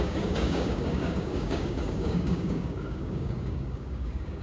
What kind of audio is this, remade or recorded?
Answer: remade